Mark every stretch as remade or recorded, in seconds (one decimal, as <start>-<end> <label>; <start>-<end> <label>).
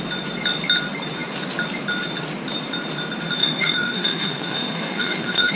0.0-3.4 recorded; 3.4-5.6 remade